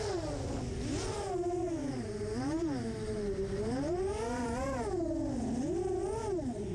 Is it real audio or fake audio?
real